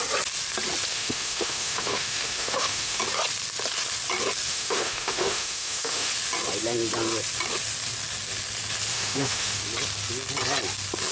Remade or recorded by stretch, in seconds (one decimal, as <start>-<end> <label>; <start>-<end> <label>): 0.0-0.9 recorded; 0.9-3.0 remade; 3.0-4.5 recorded; 4.5-6.1 remade; 6.1-8.9 recorded; 8.9-9.6 remade; 9.6-11.1 recorded

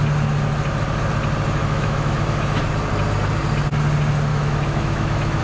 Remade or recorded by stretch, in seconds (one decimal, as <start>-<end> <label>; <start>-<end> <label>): 0.0-1.6 recorded; 1.6-2.6 remade; 2.6-4.3 recorded; 4.3-5.4 remade

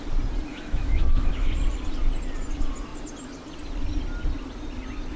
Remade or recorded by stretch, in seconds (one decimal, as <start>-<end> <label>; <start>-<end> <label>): 0.0-0.5 recorded; 0.5-1.5 remade; 1.5-5.2 recorded

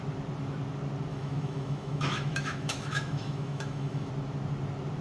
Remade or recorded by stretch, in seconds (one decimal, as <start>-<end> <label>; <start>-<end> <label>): 0.0-1.1 recorded; 1.1-4.1 remade; 4.1-5.0 recorded

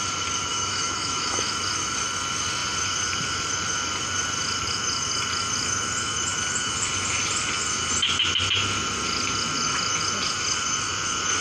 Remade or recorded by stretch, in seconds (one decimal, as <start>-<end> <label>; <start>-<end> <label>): 0.0-0.5 recorded; 0.5-1.5 remade; 1.5-11.4 recorded

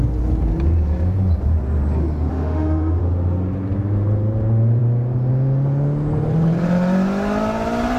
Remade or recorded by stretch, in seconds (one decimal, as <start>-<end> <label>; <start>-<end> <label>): 0.0-2.3 recorded; 2.3-3.0 remade; 3.0-8.0 recorded

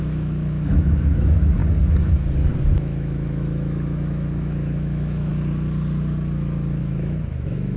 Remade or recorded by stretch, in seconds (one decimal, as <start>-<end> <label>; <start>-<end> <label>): 0.0-1.6 remade; 1.6-2.7 recorded; 2.7-5.3 remade; 5.3-6.8 recorded; 6.8-7.8 remade

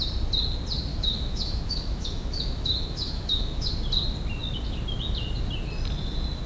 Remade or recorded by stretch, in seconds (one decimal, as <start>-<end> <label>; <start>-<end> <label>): 0.0-0.9 recorded; 0.9-3.7 remade; 3.7-6.5 recorded